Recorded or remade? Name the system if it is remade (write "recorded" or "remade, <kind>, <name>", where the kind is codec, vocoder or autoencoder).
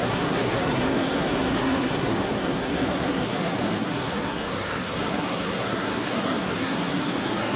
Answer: remade, codec, SNAC